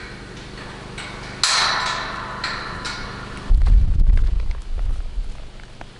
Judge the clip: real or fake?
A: real